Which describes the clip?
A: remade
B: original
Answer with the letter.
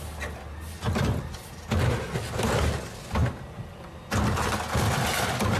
B